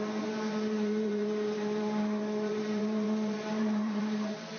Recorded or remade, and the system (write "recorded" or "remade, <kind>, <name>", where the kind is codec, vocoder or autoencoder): remade, vocoder, BigVGAN v2